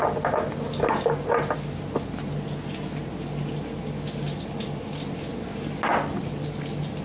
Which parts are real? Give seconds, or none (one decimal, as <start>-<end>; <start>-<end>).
0.0-7.0